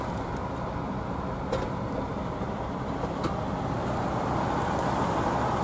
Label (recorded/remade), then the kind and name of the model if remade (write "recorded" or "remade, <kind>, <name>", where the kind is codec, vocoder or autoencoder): recorded